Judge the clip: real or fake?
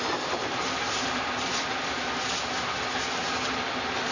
real